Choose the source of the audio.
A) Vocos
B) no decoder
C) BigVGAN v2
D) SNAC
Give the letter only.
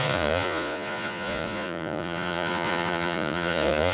A